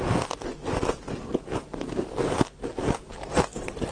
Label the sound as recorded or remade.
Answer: recorded